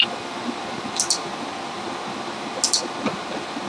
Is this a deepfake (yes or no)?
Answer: no